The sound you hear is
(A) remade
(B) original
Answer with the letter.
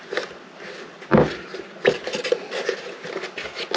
B